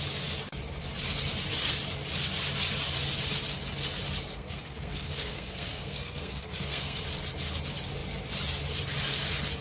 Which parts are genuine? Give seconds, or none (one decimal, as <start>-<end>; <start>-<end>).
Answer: 0.0-4.3; 7.0-9.6